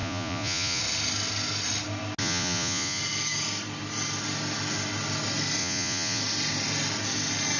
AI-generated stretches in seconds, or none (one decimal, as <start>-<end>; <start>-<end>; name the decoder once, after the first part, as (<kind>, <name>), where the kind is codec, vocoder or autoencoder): 0.0-0.8 (vocoder, Vocos); 2.2-3.0; 5.6-6.2